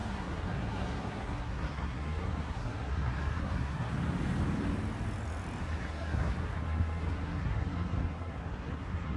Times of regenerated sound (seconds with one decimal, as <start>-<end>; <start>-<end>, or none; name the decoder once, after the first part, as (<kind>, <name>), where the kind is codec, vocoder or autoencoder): 0.0-3.9 (codec, SNAC); 5.6-9.2

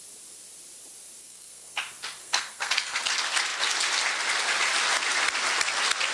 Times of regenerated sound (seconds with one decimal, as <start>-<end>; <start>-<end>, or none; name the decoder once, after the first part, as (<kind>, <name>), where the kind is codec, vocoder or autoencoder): 1.2-1.8 (codec, SNAC); 2.2-3.0

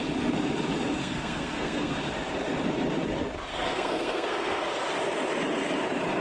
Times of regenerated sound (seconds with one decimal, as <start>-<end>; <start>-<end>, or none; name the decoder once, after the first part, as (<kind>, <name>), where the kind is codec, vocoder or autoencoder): 1.0-1.9 (codec, SNAC); 3.5-4.6

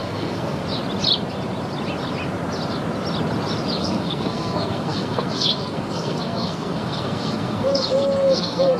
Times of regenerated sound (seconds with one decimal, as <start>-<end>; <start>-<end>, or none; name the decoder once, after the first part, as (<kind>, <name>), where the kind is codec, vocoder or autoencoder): 0.0-0.6 (codec, SNAC); 3.8-8.8

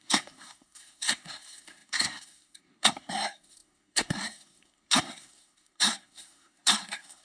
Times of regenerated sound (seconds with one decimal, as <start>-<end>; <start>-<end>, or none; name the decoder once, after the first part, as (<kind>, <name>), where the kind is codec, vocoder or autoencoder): 0.0-7.2 (codec, SNAC)

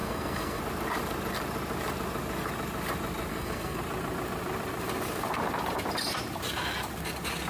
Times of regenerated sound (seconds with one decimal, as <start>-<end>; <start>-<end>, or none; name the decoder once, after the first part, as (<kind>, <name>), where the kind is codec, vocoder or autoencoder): 0.0-0.6 (codec, SNAC); 3.3-3.8